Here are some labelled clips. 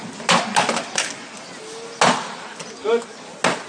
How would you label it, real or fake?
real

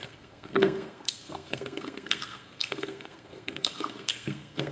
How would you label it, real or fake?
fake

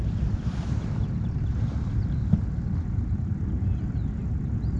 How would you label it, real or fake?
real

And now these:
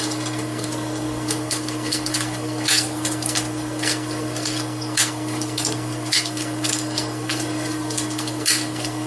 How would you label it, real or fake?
fake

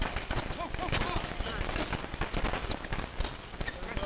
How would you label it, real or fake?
real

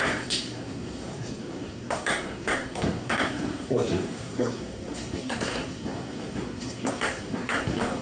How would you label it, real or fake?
fake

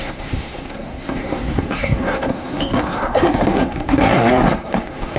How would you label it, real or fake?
fake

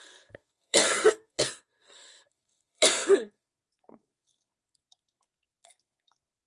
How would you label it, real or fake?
fake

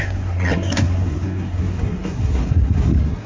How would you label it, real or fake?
fake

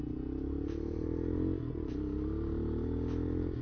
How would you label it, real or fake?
real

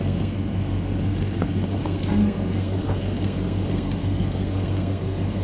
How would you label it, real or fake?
fake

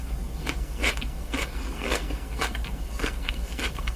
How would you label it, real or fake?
fake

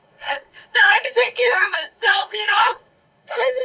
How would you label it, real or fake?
fake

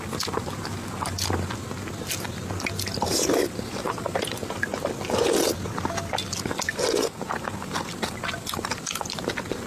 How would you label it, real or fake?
real